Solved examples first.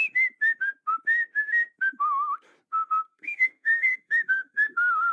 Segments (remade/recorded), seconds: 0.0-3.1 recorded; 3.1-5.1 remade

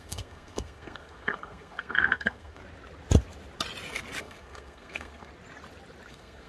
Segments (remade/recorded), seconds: 0.0-2.6 remade; 2.6-4.2 recorded; 4.2-5.3 remade; 5.3-6.1 recorded; 6.1-6.5 remade

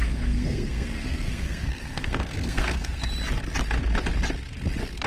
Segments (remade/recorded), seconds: 0.0-3.1 remade; 3.1-5.1 recorded

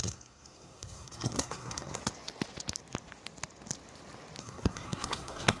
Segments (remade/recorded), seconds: 0.0-2.0 remade; 2.0-4.4 recorded; 4.4-5.6 remade

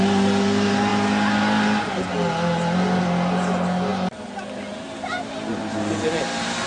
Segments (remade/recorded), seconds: 0.0-6.7 recorded

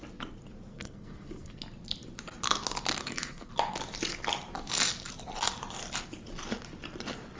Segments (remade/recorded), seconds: 0.0-0.7 recorded; 0.7-1.6 remade; 1.6-3.0 recorded; 3.0-3.5 remade; 3.5-7.4 recorded

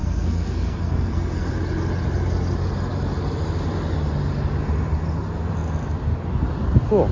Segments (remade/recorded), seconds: 0.0-1.5 remade; 1.5-7.1 recorded

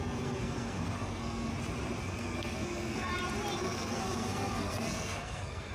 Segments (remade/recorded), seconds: 0.0-1.5 remade; 1.5-2.0 recorded; 2.0-3.1 remade; 3.1-3.6 recorded; 3.6-5.7 remade